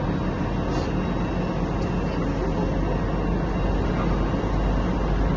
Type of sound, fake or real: real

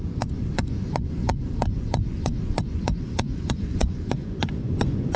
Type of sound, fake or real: fake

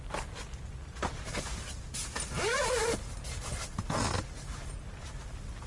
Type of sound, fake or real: real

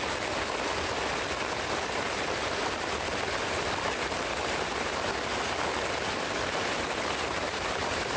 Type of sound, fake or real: real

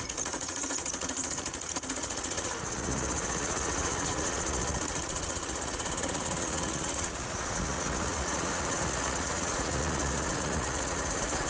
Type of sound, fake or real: fake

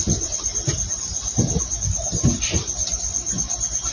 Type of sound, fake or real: real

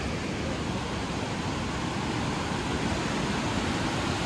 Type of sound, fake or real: real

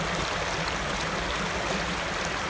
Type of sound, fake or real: real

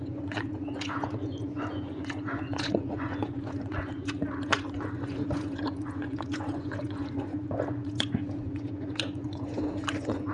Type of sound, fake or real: fake